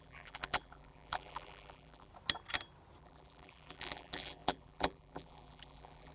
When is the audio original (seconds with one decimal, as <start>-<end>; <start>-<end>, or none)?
2.1-3.0

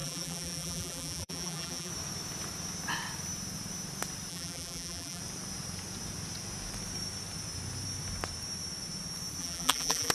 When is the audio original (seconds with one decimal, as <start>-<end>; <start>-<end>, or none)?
1.9-4.3; 5.2-9.4

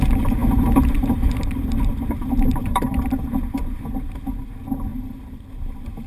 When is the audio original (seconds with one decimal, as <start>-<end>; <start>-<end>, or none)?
0.0-0.4; 4.1-6.1

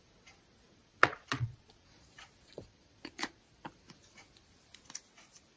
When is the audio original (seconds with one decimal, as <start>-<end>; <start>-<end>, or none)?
0.0-0.8; 3.4-5.6

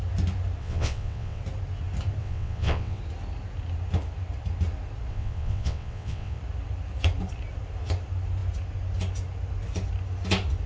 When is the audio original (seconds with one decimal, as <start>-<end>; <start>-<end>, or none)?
0.0-0.6; 1.4-2.2; 3.0-5.1; 6.4-10.7

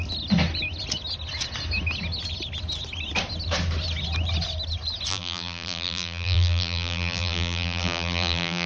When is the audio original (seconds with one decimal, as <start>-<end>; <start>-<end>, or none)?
0.0-5.1